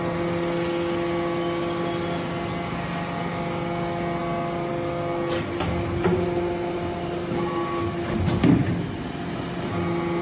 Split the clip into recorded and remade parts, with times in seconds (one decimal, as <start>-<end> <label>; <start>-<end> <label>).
0.0-10.2 recorded